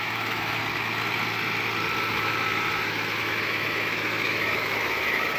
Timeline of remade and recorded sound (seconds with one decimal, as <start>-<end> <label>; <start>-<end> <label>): 0.0-0.6 remade; 0.6-2.1 recorded; 2.1-5.4 remade